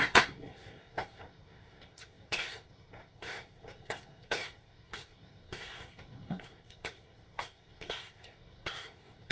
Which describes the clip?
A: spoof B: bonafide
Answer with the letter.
A